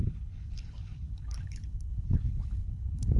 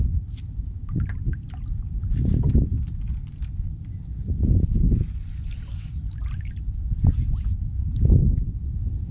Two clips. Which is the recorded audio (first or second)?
second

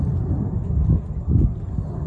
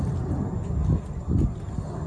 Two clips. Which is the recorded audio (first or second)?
second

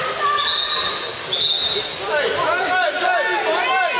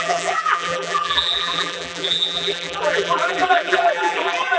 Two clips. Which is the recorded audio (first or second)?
first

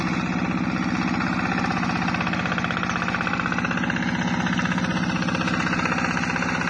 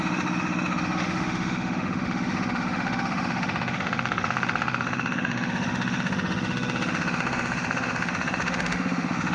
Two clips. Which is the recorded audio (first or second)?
first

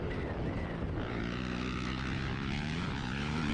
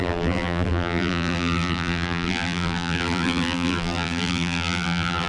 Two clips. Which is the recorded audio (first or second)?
first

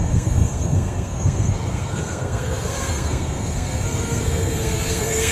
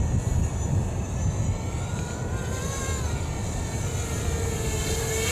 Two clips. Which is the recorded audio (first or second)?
second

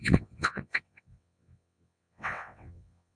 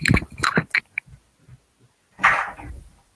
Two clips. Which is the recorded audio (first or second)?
second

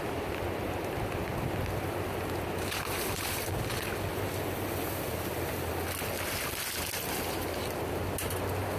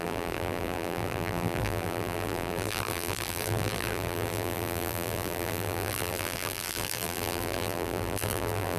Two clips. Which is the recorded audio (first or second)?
first